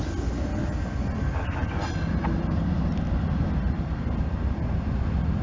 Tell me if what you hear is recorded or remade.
recorded